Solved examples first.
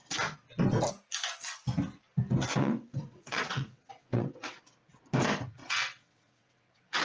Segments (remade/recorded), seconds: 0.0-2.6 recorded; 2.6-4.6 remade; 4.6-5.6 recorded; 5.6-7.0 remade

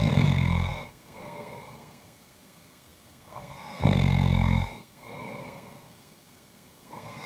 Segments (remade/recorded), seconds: 0.0-7.3 remade

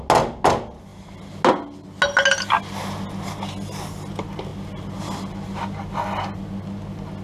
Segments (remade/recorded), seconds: 0.0-7.2 recorded